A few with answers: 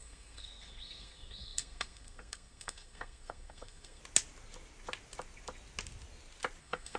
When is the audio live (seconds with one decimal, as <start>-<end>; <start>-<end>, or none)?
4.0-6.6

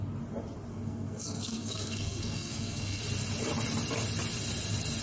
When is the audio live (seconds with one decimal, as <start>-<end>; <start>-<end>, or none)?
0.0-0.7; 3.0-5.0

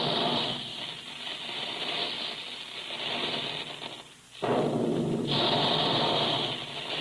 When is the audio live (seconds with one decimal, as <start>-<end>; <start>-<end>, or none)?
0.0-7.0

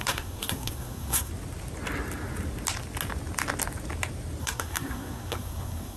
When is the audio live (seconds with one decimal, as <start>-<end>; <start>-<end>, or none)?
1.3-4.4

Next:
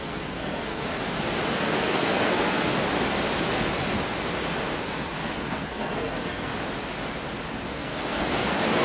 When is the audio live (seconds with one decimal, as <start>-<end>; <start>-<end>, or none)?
0.9-1.5; 2.7-4.8; 6.5-7.7

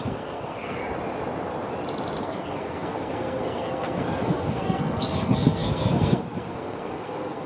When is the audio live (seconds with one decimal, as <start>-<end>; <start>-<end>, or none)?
0.8-2.2

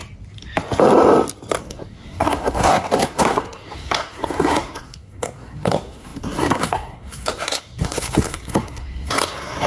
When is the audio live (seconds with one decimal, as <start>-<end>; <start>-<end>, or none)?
0.0-1.6

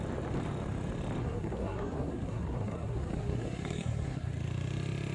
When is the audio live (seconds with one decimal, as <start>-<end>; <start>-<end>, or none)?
0.0-1.2; 4.3-5.1